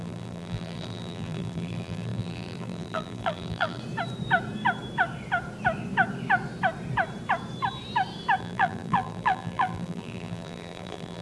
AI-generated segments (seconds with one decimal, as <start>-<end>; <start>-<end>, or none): 0.0-3.8; 8.4-11.2